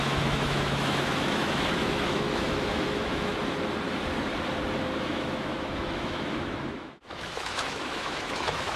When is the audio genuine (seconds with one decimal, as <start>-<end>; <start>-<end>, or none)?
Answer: 3.3-5.0